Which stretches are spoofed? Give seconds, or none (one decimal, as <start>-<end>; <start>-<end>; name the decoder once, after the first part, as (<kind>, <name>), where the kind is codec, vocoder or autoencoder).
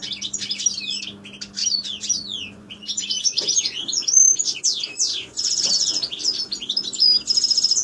1.6-4.6 (vocoder, Vocos); 5.1-5.7